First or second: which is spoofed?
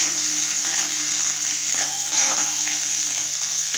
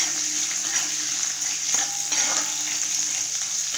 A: first